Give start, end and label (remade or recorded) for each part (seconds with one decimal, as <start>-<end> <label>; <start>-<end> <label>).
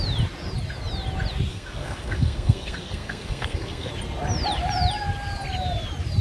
0.0-1.5 recorded; 1.5-3.9 remade; 3.9-6.2 recorded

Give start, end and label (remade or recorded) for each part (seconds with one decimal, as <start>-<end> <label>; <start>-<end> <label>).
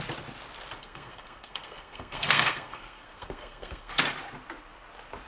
0.0-0.8 recorded; 0.8-4.0 remade; 4.0-5.3 recorded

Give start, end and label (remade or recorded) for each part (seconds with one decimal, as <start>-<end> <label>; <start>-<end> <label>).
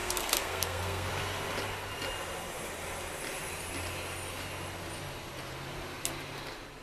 0.0-1.1 remade; 1.1-6.8 recorded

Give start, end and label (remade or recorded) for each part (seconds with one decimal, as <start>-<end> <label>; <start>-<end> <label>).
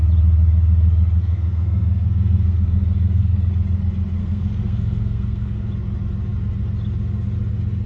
0.0-1.2 recorded; 1.2-3.5 remade; 3.5-4.2 recorded; 4.2-5.7 remade; 5.7-7.9 recorded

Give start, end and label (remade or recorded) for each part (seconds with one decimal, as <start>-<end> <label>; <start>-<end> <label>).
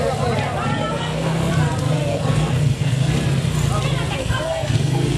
0.0-0.9 recorded; 0.9-1.5 remade; 1.5-2.1 recorded; 2.1-3.1 remade; 3.1-4.2 recorded; 4.2-5.2 remade